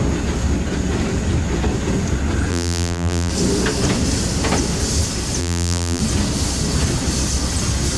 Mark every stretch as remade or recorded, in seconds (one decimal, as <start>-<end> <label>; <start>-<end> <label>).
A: 0.0-2.5 recorded; 2.5-3.3 remade; 3.3-5.4 recorded; 5.4-6.0 remade; 6.0-8.0 recorded